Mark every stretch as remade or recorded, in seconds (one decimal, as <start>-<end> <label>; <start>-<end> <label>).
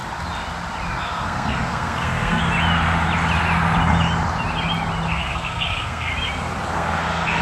0.0-1.0 recorded; 1.0-2.4 remade; 2.4-5.1 recorded; 5.1-6.1 remade; 6.1-6.7 recorded; 6.7-7.4 remade